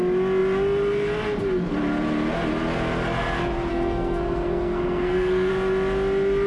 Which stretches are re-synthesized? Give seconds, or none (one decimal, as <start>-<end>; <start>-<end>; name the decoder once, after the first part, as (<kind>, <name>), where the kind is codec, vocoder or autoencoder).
3.7-5.5 (codec, SNAC)